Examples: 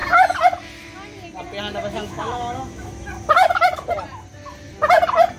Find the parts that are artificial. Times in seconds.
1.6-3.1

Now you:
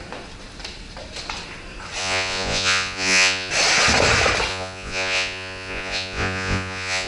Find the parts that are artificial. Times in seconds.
2.0-3.5; 4.5-7.1

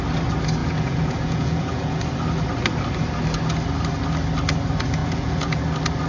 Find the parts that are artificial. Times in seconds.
0.6-2.0; 5.0-5.6

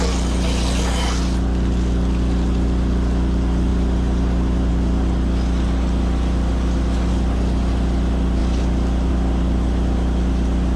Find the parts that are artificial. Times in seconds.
none

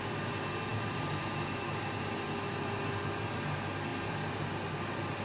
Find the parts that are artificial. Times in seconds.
3.9-4.4

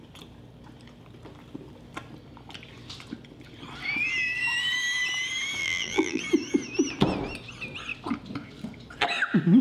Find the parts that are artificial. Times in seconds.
5.6-6.2

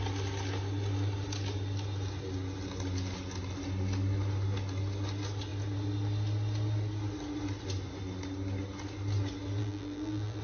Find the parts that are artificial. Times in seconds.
9.6-10.4